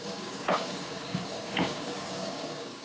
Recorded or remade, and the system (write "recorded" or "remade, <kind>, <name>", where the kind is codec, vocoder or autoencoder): remade, codec, DAC